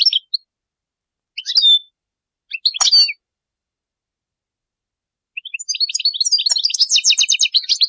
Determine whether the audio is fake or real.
real